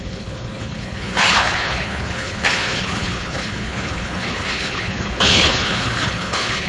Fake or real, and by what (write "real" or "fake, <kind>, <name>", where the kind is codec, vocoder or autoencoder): fake, codec, HILCodec